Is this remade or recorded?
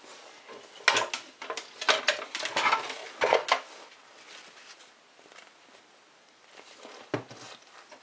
recorded